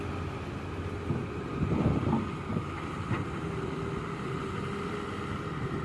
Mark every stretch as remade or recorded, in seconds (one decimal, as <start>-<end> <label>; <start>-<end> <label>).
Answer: 0.0-1.5 recorded; 1.5-4.0 remade; 4.0-5.8 recorded